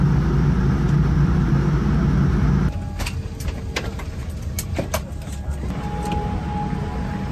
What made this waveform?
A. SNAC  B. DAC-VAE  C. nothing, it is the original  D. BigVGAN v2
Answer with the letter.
C